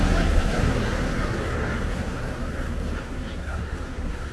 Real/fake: fake